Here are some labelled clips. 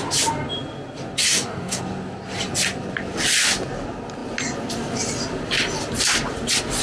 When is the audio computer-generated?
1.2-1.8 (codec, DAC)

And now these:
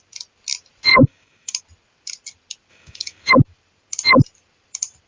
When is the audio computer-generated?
0.9-1.6 (codec, DAC); 2.7-3.3

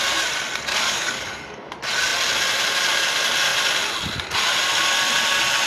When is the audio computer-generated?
0.7-1.7 (codec, DAC)

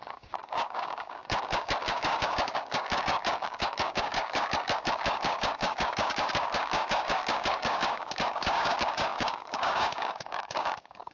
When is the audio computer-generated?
0.0-11.1 (codec, DAC)

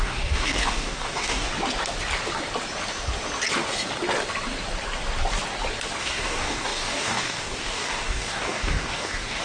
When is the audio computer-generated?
0.0-1.5 (codec, DAC); 6.0-9.4

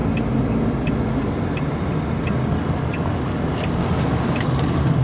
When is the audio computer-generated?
2.5-3.8 (codec, DAC); 4.4-5.0

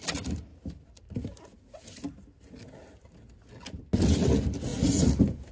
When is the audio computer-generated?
none